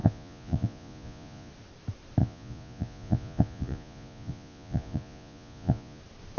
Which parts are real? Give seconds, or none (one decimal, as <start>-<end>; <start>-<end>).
1.5-2.2; 6.0-6.4